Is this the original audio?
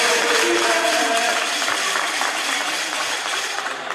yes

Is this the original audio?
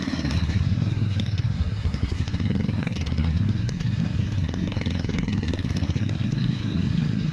no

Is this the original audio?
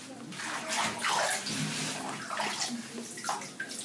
yes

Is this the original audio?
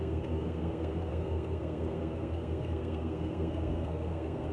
no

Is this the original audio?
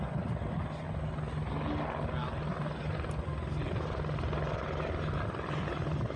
yes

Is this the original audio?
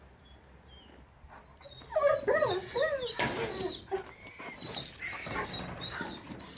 yes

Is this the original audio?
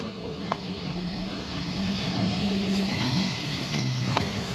no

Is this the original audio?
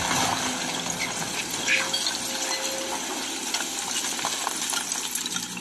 yes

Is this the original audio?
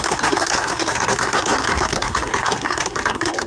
no